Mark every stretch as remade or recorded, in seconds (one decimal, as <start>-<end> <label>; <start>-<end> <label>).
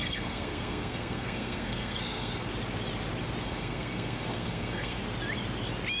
0.0-2.5 remade; 2.5-3.4 recorded; 3.4-5.0 remade; 5.0-6.0 recorded